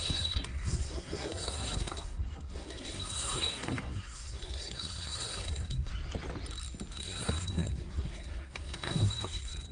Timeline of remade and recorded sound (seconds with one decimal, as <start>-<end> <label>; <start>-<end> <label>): 0.0-5.9 remade; 5.9-6.9 recorded; 6.9-9.7 remade